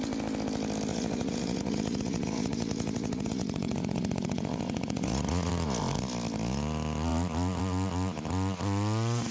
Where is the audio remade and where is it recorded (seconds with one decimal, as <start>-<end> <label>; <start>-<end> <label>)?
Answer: 0.0-0.9 recorded; 0.9-5.5 remade; 5.5-9.3 recorded